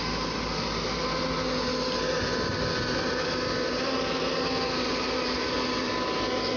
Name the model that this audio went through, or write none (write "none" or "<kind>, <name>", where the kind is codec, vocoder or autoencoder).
none